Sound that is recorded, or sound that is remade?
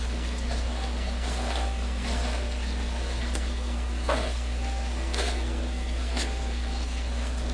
remade